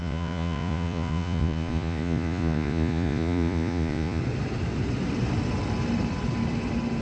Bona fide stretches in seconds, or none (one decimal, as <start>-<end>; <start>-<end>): 4.2-7.0